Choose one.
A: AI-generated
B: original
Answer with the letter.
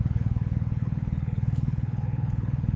A